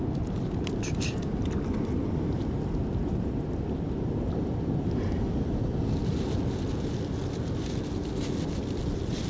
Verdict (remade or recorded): recorded